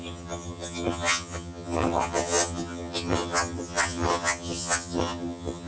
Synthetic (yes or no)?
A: yes